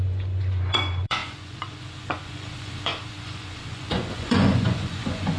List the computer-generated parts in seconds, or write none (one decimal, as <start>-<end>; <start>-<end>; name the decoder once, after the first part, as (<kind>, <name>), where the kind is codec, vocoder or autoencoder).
0.0-5.4 (vocoder, Vocos)